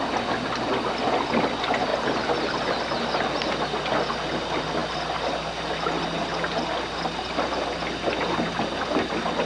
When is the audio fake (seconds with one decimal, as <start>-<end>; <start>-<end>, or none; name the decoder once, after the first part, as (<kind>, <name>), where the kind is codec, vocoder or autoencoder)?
none